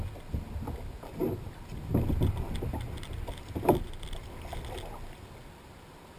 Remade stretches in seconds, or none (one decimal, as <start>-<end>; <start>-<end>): none